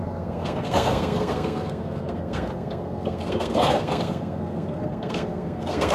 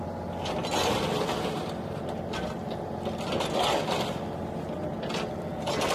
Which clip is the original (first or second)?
second